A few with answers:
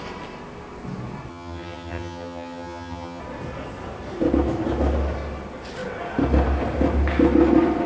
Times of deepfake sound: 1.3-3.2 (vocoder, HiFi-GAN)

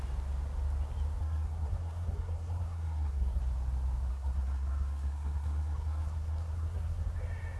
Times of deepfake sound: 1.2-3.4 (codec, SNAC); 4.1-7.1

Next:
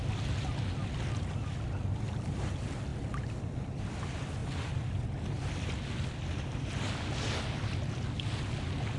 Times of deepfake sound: none

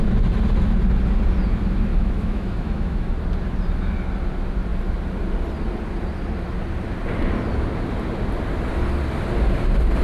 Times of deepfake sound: 1.9-3.1 (autoencoder, DAC-VAE)

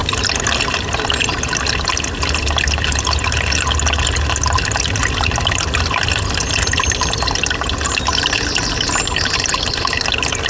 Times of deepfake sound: none

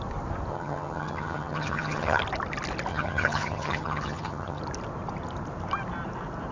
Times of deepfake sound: 0.5-2.2 (vocoder, HiFi-GAN); 2.9-4.6

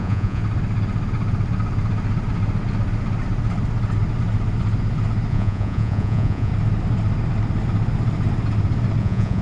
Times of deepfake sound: 0.0-0.4 (vocoder, Vocos); 5.3-6.5; 9.0-9.4